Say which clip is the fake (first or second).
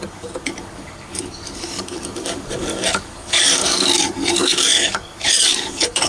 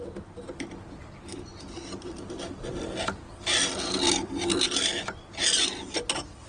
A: first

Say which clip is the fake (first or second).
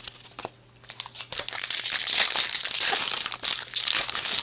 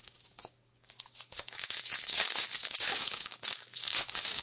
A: second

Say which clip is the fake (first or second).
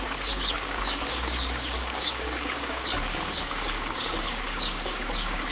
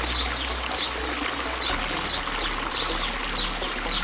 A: first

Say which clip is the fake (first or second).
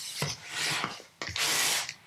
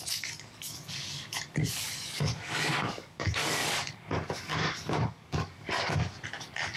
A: second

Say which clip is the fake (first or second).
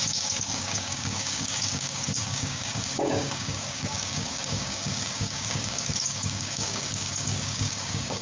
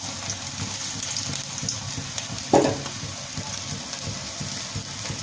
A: first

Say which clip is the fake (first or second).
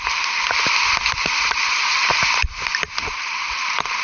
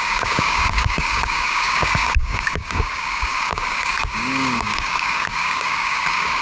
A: second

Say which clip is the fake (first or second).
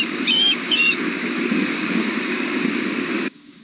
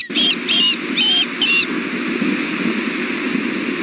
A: first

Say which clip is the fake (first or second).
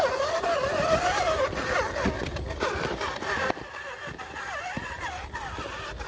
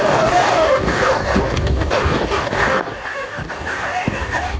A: second